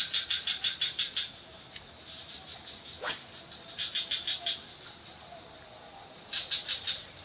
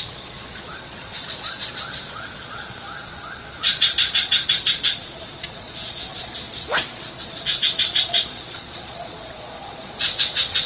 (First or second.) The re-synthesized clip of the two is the second